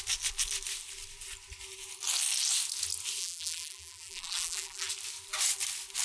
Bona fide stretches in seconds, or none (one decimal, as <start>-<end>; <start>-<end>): 0.0-3.2; 4.9-6.0